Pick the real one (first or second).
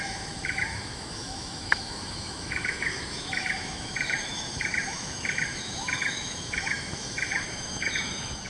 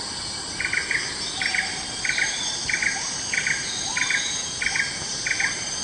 second